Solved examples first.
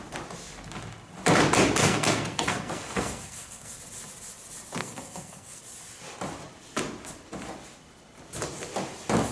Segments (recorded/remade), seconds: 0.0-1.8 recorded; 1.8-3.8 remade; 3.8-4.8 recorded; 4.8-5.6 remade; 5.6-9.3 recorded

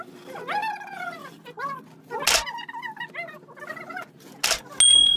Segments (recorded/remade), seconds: 0.0-5.2 recorded

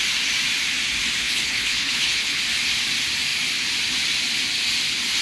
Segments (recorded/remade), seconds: 0.0-1.2 recorded; 1.2-2.4 remade; 2.4-5.2 recorded

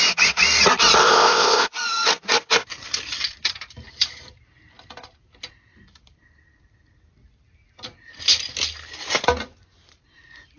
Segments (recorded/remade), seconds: 0.0-1.0 recorded; 1.0-1.7 remade; 1.7-10.6 recorded

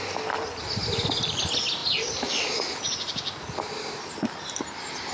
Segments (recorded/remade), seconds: 0.0-5.1 recorded